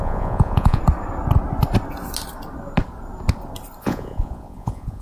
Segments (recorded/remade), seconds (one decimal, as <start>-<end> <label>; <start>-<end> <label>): 0.0-0.8 remade; 0.8-3.8 recorded; 3.8-5.0 remade